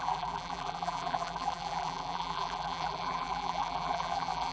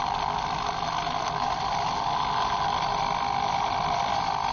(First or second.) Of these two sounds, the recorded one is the second